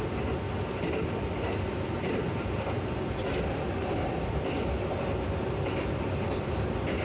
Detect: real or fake real